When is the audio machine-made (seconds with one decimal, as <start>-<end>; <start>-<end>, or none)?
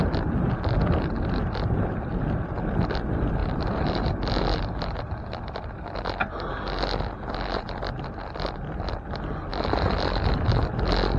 3.4-5.0; 9.5-10.3